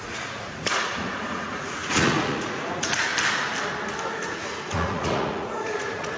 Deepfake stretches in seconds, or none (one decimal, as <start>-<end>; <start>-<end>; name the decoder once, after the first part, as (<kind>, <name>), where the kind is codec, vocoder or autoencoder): 0.0-3.1 (vocoder, Vocos); 4.1-6.2